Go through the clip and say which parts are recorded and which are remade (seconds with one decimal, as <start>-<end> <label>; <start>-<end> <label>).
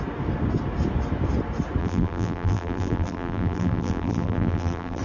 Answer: 0.0-1.8 recorded; 1.8-5.0 remade